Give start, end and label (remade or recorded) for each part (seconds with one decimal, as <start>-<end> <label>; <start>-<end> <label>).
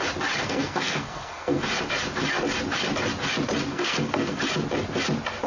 0.0-0.4 recorded; 0.4-1.6 remade; 1.6-3.7 recorded; 3.7-4.4 remade; 4.4-5.5 recorded